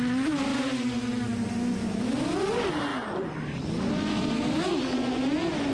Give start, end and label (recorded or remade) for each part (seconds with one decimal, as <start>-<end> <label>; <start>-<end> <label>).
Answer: 0.0-5.7 recorded